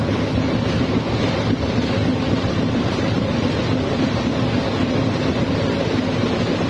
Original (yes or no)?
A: yes